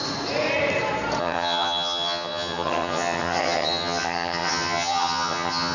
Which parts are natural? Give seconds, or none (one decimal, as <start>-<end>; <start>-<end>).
0.0-1.2